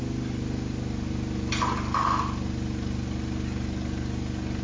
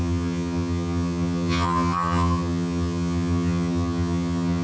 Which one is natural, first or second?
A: first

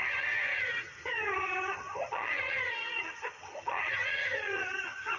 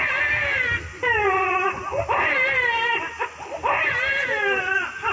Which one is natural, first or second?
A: second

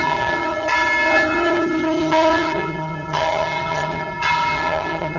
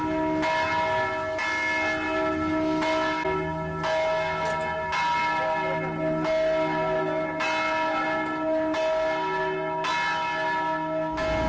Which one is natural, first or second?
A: second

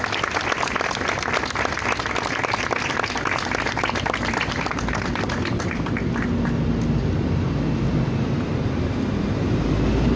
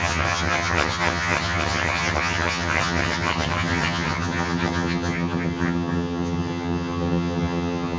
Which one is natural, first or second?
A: first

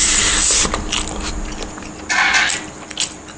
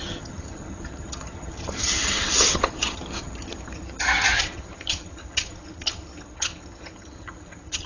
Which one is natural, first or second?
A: first